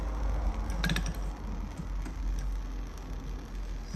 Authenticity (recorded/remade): recorded